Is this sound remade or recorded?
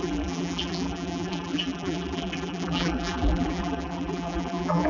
remade